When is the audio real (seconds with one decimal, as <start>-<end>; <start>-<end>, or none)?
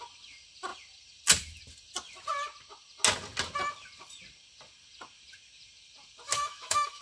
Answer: 0.0-6.3